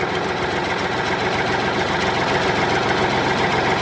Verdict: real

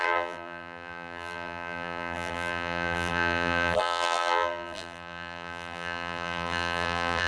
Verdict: fake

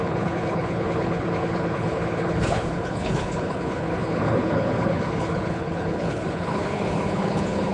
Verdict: fake